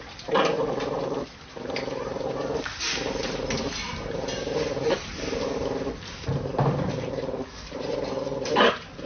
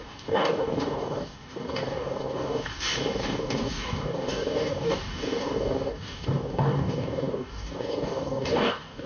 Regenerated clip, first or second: second